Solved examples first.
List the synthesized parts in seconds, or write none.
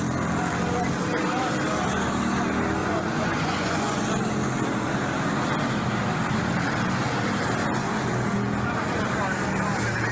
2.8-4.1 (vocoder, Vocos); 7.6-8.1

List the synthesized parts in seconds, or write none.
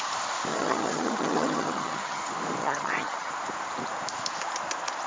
0.5-2.2 (vocoder, HiFi-GAN); 2.6-3.3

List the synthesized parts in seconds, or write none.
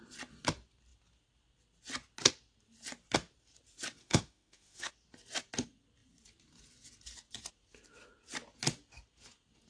4.0-4.9 (autoencoder, DAC-VAE)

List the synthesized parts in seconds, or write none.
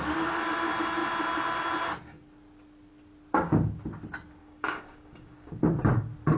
4.4-5.5 (codec, DAC)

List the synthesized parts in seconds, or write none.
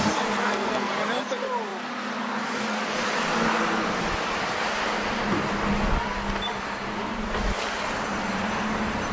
0.4-0.9 (codec, SNAC)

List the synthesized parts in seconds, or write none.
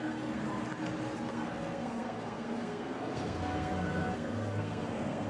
0.0-0.4 (codec, SNAC); 1.3-5.3